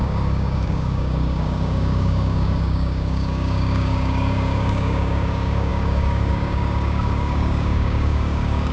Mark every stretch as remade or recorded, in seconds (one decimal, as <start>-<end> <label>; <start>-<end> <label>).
0.0-8.7 remade

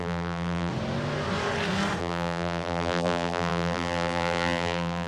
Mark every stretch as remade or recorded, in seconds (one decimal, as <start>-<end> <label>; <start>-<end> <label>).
0.0-0.7 remade; 0.7-2.0 recorded; 2.0-5.1 remade

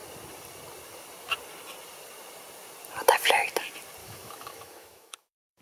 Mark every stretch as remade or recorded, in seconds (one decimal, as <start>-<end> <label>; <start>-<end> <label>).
0.0-4.0 recorded; 4.0-5.6 remade

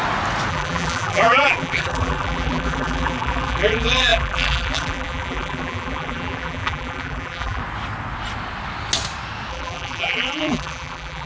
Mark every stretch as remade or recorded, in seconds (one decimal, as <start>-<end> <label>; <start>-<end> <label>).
0.0-0.5 recorded; 0.5-7.6 remade; 7.6-9.5 recorded; 9.5-11.3 remade

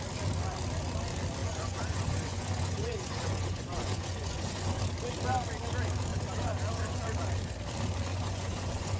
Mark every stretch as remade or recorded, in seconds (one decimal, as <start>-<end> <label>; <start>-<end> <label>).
0.0-1.4 recorded; 1.4-4.8 remade; 4.8-6.1 recorded; 6.1-7.0 remade; 7.0-8.1 recorded; 8.1-9.0 remade

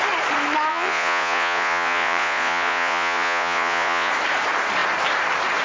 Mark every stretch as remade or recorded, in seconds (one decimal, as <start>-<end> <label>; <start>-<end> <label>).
0.0-0.7 recorded; 0.7-4.1 remade; 4.1-5.6 recorded

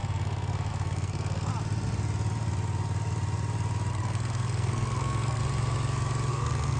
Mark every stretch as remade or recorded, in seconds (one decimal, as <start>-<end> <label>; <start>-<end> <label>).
0.0-1.5 remade; 1.5-3.9 recorded; 3.9-5.4 remade; 5.4-6.3 recorded; 6.3-6.8 remade

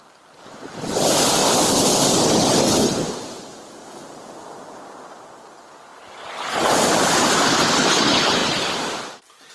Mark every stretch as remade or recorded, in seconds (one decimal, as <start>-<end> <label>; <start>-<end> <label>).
0.0-9.5 recorded